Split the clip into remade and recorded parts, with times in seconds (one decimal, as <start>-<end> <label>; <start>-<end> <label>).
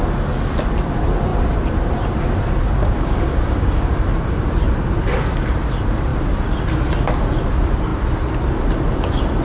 0.0-2.8 recorded; 2.8-3.9 remade; 3.9-9.4 recorded